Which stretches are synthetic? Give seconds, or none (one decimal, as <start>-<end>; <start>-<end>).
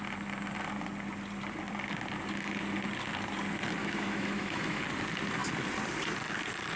3.8-4.8